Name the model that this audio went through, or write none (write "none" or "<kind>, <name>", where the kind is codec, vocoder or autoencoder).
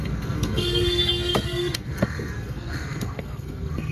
codec, SNAC